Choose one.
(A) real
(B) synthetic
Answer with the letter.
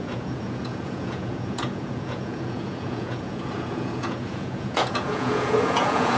B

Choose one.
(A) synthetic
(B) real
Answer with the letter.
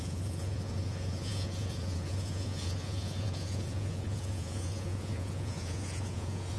A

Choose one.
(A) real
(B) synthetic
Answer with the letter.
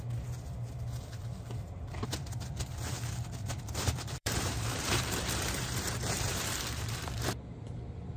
B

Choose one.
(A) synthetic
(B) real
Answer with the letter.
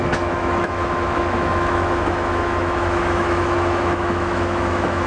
A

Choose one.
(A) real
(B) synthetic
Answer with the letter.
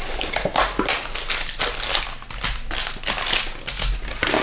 A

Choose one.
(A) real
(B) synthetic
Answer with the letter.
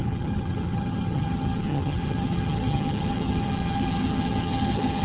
B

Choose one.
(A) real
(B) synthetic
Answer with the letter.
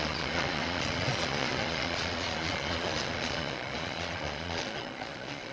B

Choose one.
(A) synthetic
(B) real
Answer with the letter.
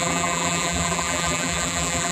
A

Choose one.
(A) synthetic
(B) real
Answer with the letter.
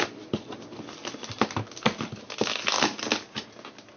B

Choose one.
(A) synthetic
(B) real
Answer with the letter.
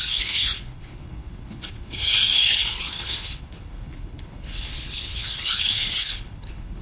A